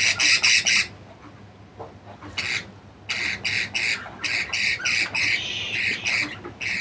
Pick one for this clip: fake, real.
real